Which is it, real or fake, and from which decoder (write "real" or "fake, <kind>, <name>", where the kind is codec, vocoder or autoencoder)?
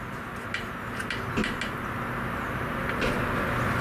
real